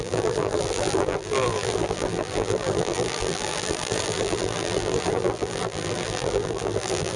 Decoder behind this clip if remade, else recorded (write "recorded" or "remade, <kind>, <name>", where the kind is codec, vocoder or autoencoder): remade, vocoder, BigVGAN v2